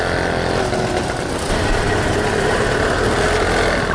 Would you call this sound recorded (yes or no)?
yes